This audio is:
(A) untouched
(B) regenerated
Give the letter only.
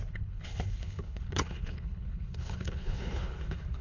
B